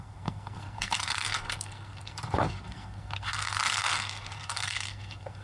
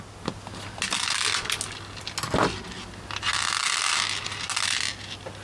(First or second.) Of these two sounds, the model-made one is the first